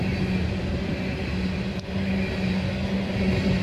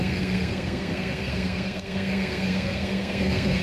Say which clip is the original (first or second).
first